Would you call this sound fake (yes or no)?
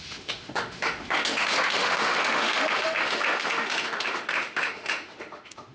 yes